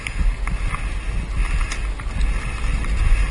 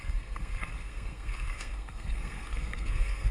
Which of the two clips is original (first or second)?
first